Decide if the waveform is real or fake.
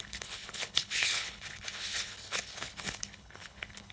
fake